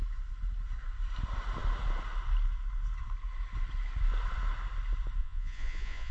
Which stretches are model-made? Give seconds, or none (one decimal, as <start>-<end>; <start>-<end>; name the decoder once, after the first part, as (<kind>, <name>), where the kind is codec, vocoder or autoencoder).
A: 5.2-6.1 (vocoder, Vocos)